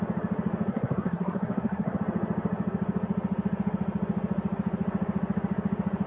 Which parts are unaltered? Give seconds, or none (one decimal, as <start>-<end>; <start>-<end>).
0.0-0.7; 2.0-6.1